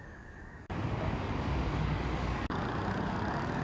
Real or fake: fake